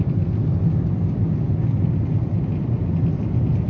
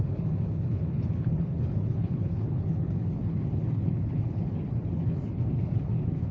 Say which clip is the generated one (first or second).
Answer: second